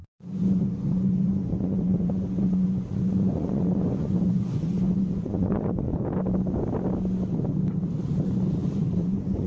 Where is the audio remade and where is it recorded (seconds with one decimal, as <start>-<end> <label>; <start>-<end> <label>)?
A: 0.0-5.9 remade; 5.9-8.6 recorded; 8.6-9.5 remade